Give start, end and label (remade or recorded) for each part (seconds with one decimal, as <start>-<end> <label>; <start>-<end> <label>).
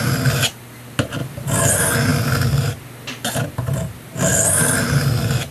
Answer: 0.0-5.5 recorded